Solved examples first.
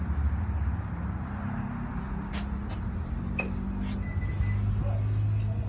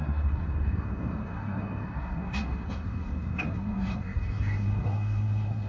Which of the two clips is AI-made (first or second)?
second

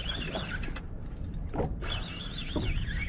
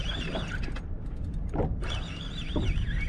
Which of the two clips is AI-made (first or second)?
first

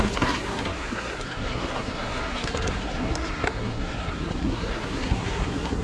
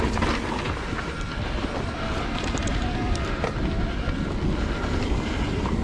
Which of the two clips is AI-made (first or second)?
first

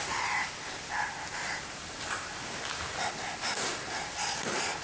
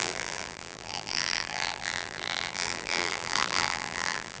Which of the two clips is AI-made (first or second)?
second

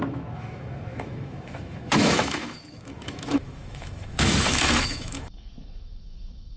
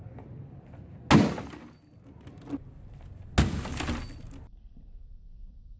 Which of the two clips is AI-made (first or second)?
first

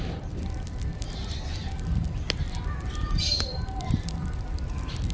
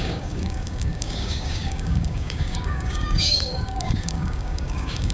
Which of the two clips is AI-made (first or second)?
second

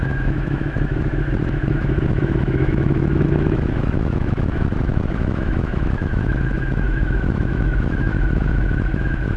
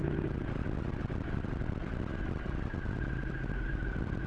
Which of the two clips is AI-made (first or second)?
first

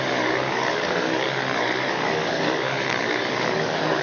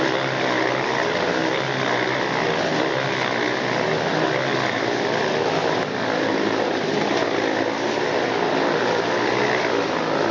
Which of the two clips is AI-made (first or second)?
first